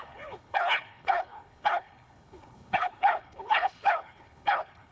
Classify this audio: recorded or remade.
remade